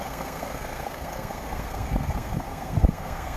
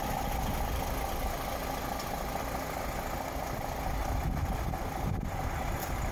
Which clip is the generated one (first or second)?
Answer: first